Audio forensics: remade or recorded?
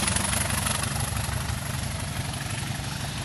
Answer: recorded